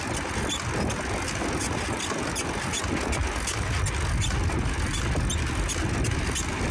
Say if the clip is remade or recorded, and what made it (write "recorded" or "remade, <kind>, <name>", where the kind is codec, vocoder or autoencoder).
recorded